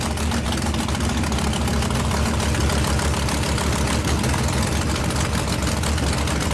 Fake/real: real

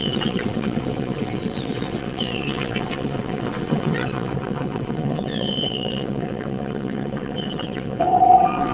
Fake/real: fake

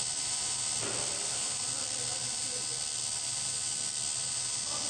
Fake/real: real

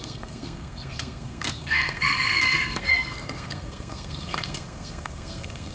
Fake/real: fake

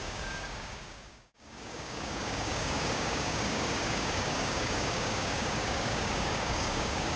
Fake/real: fake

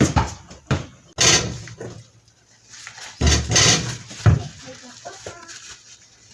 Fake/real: real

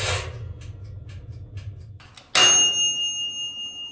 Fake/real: real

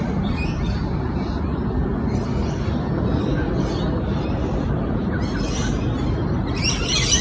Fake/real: real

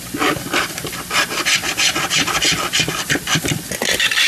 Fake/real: real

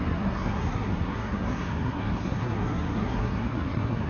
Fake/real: fake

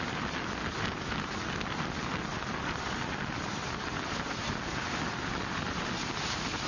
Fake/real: real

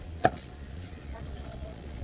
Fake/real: fake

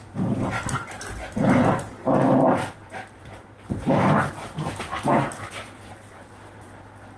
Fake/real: fake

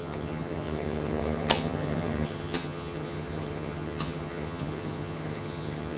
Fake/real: fake